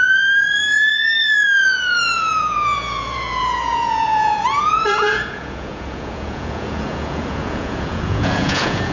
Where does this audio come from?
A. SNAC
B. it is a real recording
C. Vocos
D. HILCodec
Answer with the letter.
C